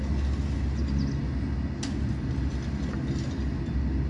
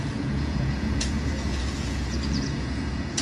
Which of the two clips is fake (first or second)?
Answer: second